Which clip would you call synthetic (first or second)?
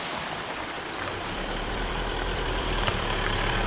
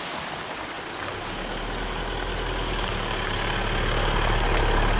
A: first